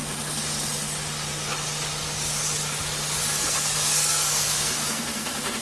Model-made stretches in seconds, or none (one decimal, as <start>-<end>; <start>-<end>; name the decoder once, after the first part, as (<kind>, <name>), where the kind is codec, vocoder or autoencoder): 3.4-5.6 (codec, SNAC)